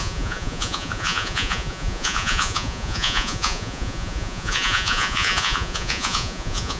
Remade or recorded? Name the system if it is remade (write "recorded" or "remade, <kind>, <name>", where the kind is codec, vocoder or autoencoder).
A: remade, vocoder, Vocos